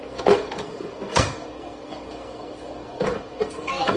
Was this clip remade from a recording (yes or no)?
yes